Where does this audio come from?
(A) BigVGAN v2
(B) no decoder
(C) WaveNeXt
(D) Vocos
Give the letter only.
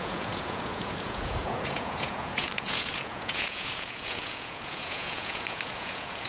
D